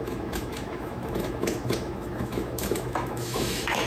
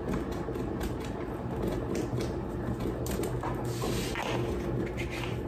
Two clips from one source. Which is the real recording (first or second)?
second